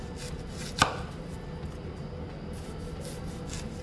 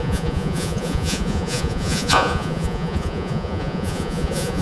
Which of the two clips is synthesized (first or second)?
second